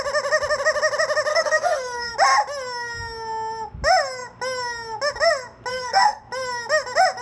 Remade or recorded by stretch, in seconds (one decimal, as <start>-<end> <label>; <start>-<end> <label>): 0.0-1.3 recorded; 1.3-2.1 remade; 2.1-5.7 recorded; 5.7-6.2 remade; 6.2-7.2 recorded